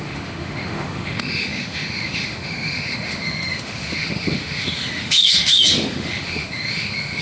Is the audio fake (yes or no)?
yes